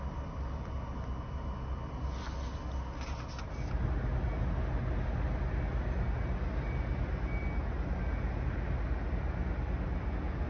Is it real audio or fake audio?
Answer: real